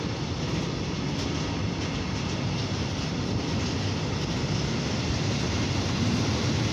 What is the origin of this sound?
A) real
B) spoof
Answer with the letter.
A